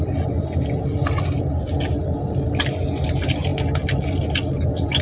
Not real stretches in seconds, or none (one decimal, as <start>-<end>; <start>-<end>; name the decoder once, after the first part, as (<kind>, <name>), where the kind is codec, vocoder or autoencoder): none